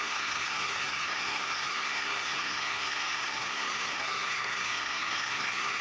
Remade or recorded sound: remade